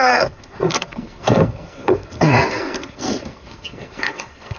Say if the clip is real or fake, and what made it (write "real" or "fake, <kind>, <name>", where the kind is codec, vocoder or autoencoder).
fake, codec, SNAC